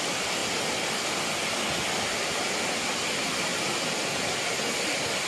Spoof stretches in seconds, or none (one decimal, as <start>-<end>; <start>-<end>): none